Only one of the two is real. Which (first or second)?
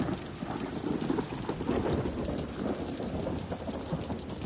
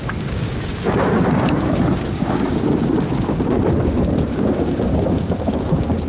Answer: first